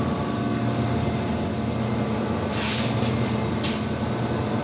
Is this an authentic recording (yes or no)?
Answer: no